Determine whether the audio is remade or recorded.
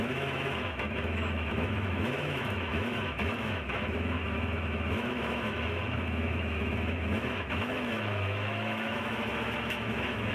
remade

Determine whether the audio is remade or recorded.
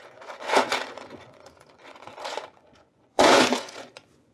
remade